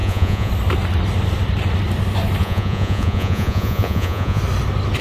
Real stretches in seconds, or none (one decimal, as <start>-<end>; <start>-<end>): 0.5-2.4; 4.4-5.0